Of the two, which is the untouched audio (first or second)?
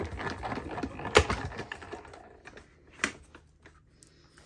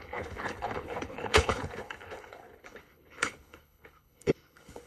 first